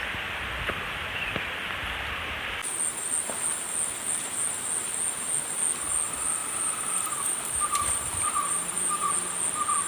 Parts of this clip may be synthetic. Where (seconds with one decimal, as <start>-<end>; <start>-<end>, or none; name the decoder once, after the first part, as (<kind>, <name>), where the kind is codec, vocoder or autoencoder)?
6.4-9.1 (vocoder, BigVGAN v2)

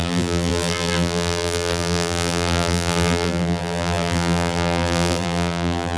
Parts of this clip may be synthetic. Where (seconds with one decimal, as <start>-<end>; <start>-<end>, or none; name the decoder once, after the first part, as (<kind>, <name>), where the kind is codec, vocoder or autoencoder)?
0.0-6.0 (vocoder, BigVGAN v2)